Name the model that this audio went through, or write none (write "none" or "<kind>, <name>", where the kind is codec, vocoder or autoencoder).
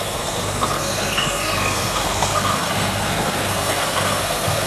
codec, SNAC